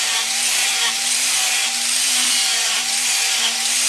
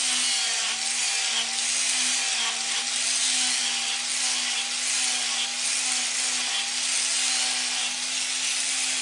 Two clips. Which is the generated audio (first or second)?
first